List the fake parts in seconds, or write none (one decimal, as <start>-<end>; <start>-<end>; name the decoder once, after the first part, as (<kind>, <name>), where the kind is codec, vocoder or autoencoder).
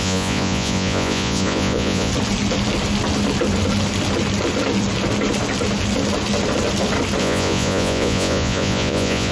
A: 0.0-2.1 (vocoder, Vocos); 7.2-9.3